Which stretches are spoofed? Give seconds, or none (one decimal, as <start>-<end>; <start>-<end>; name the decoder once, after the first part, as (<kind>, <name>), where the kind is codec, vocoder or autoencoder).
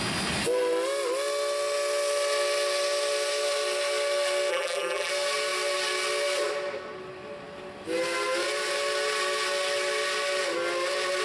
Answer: 4.5-5.1 (vocoder, BigVGAN v2)